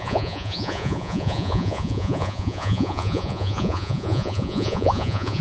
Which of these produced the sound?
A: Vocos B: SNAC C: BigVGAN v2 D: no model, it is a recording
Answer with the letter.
A